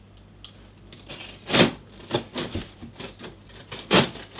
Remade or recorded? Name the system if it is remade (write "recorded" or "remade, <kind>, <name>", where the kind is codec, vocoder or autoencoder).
recorded